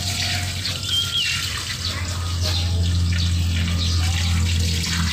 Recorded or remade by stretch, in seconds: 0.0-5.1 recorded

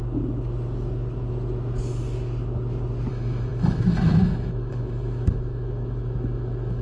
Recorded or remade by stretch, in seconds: 0.0-3.1 recorded; 3.1-6.8 remade

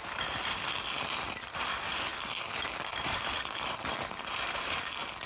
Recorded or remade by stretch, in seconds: 0.0-5.3 recorded